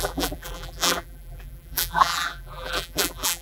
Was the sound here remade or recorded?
remade